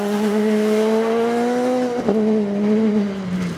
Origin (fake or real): real